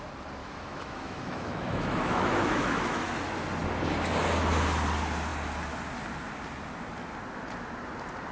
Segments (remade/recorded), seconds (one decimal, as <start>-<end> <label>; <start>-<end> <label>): 0.0-0.4 recorded; 0.4-3.0 remade; 3.0-8.3 recorded